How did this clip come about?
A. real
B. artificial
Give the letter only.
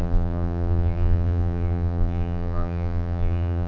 B